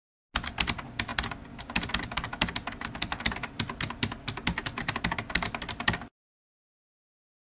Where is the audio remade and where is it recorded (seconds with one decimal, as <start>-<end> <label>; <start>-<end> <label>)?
0.0-7.6 recorded